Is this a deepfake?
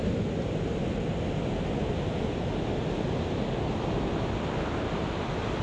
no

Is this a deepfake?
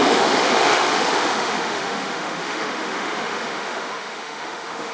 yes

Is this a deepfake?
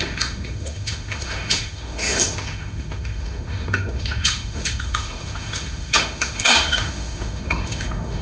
yes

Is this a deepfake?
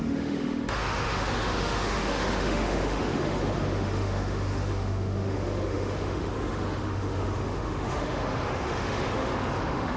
yes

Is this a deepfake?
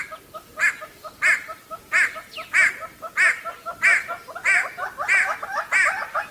no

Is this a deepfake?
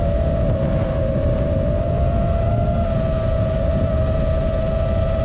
no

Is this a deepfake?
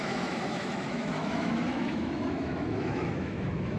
yes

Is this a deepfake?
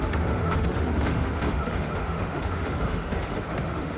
yes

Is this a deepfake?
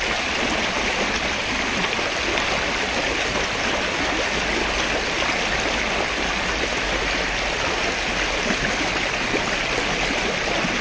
no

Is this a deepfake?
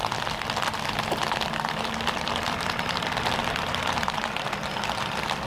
no